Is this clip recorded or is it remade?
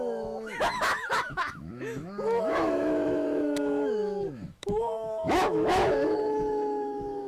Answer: remade